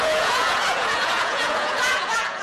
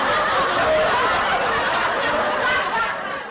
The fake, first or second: first